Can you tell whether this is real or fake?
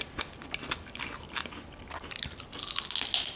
real